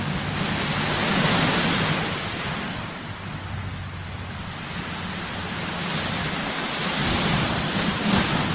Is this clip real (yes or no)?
yes